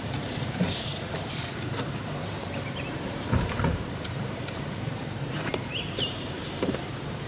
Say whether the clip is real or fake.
fake